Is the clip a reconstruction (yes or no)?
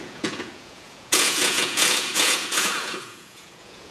yes